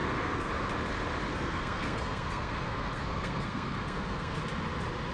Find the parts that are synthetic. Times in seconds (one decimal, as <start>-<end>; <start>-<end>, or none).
0.0-0.5; 1.3-4.4